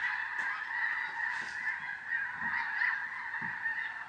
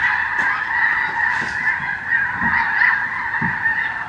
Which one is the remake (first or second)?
second